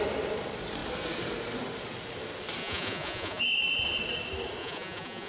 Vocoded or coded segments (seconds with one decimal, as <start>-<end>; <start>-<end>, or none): 2.6-3.4; 4.6-5.3